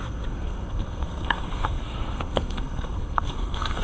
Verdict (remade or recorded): remade